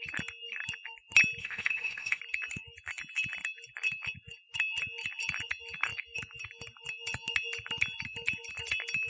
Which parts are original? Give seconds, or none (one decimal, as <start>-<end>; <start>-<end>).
0.0-1.4; 2.2-9.1